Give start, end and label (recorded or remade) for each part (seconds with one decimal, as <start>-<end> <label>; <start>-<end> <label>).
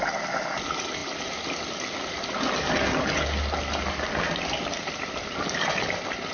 0.0-6.3 recorded